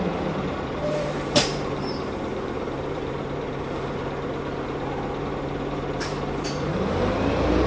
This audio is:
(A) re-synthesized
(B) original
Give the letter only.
A